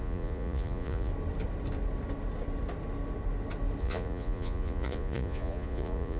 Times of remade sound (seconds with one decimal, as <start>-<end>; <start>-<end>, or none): 0.0-1.1; 3.8-6.2